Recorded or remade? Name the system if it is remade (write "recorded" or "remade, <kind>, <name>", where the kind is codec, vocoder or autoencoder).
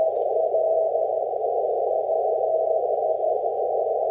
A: recorded